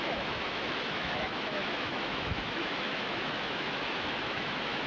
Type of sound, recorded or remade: remade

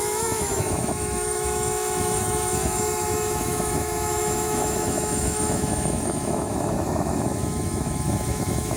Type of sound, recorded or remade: remade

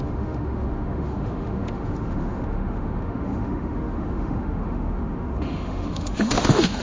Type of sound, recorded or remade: remade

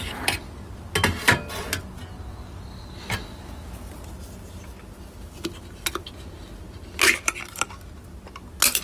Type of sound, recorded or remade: recorded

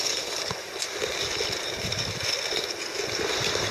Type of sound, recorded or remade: recorded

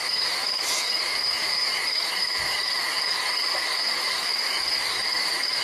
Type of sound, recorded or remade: remade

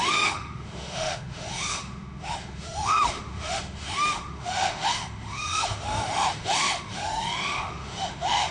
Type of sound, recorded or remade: remade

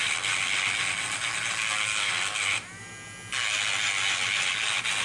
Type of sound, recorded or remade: recorded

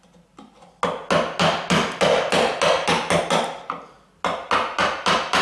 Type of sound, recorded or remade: recorded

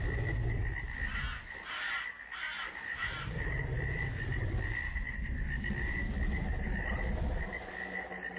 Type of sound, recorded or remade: recorded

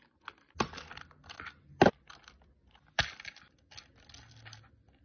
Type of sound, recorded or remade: recorded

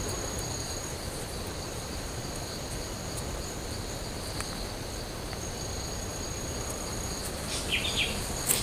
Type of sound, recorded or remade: recorded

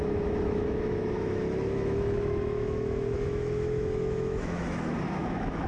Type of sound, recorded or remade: remade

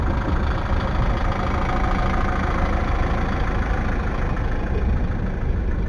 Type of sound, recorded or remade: recorded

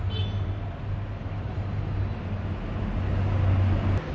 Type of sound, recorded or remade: recorded